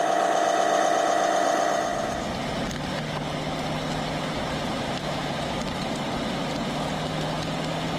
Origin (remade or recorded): recorded